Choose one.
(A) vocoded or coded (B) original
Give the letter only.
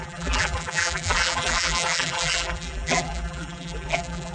A